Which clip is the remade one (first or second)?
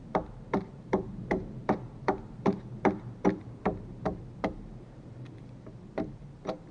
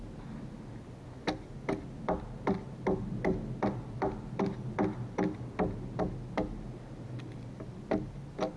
first